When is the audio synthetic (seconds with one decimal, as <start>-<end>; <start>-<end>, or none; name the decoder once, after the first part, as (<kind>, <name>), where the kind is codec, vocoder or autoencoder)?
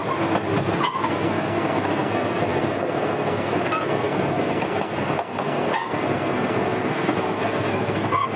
0.6-8.4 (codec, SNAC)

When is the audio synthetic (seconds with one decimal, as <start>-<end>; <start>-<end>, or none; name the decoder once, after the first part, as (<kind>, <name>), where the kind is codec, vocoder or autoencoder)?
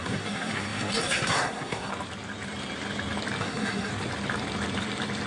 0.0-1.9 (codec, SNAC); 3.4-3.9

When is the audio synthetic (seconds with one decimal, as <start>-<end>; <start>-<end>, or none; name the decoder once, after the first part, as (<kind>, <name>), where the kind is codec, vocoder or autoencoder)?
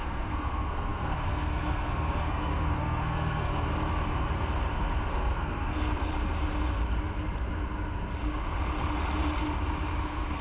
0.0-3.7 (codec, SNAC); 5.1-6.1; 10.0-10.4